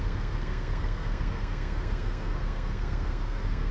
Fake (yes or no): yes